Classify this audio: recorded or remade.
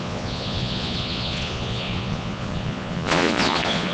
remade